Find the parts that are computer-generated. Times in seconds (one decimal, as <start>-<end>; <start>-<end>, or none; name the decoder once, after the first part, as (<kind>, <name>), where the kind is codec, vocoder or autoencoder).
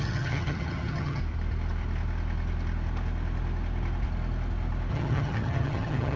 0.0-1.2 (vocoder, HiFi-GAN); 4.9-6.2